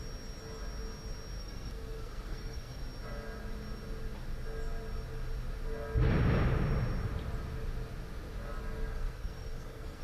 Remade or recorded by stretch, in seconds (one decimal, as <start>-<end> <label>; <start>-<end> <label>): 0.0-1.4 recorded; 1.4-2.8 remade; 2.8-8.9 recorded; 8.9-10.0 remade